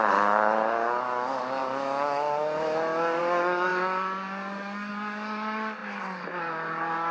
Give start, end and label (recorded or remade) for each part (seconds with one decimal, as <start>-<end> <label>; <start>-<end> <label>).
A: 0.0-7.1 remade